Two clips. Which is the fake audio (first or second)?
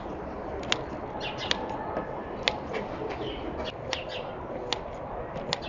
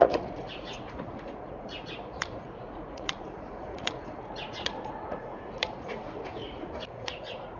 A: second